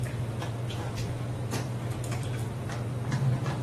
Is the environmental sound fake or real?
fake